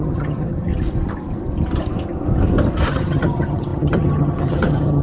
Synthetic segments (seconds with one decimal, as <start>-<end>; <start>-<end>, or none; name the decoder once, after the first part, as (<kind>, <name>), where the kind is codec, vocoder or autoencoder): 0.0-0.7 (vocoder, HiFi-GAN); 2.9-5.0